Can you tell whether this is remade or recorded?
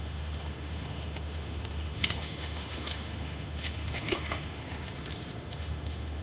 remade